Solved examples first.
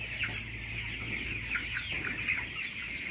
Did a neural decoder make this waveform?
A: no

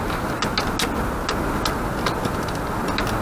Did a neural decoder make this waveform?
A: no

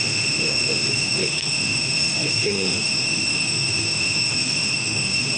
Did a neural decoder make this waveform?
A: yes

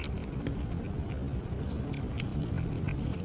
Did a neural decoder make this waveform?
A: no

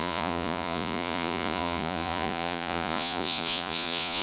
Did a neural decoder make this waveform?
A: yes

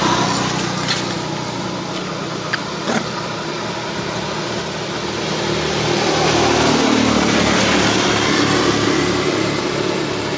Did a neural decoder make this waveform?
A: no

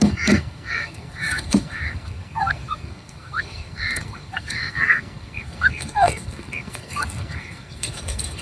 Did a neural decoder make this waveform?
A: yes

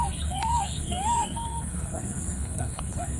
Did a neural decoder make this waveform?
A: yes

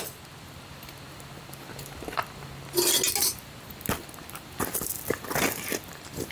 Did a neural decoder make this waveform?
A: no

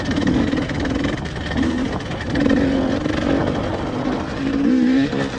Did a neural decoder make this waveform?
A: no